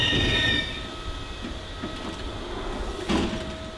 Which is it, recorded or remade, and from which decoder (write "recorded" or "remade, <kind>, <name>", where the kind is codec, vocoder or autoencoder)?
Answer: recorded